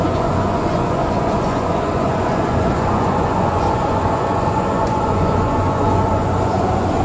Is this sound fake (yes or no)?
yes